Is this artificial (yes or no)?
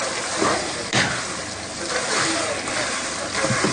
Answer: no